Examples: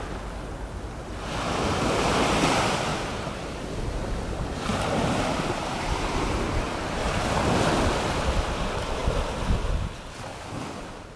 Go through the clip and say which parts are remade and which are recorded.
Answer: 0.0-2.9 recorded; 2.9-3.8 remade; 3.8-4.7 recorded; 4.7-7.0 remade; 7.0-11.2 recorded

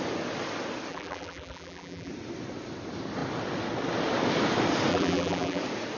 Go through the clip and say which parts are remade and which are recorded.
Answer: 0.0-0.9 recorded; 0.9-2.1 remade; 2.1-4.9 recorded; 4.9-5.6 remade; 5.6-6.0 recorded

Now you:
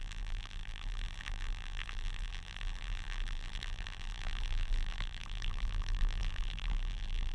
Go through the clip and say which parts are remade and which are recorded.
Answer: 0.0-7.3 remade

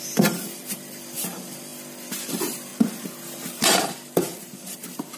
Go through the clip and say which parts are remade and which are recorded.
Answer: 0.0-1.7 remade; 1.7-2.3 recorded; 2.3-2.7 remade; 2.7-3.6 recorded; 3.6-5.2 remade

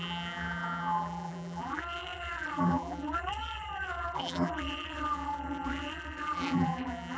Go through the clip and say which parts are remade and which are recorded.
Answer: 0.0-7.2 remade